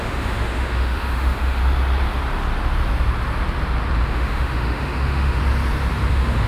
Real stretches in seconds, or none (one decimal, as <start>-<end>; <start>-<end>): 1.6-4.0; 5.4-6.1